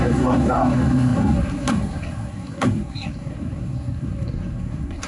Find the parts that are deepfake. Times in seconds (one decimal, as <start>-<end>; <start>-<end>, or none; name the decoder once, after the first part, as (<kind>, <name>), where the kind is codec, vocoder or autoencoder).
0.0-5.1 (codec, SNAC)